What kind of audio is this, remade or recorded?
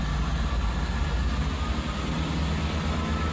recorded